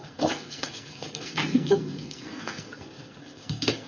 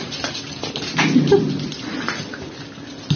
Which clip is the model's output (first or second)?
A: first